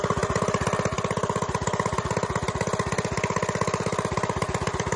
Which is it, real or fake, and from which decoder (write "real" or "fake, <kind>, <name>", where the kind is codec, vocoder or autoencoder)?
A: real